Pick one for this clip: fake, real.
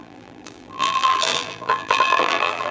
fake